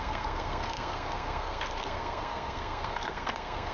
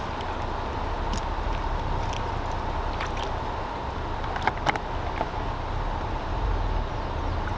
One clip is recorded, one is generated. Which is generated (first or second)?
first